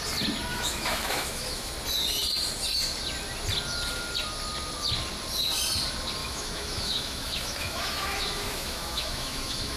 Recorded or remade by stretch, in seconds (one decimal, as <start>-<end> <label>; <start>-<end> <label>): 0.0-0.5 recorded; 0.5-1.7 remade; 1.7-6.2 recorded; 6.2-9.8 remade